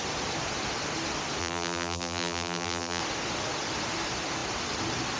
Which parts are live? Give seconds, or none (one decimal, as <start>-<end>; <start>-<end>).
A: 0.0-1.4; 3.0-5.2